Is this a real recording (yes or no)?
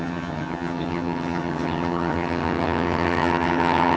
no